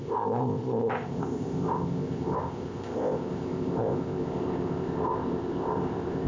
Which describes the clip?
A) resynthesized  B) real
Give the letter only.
A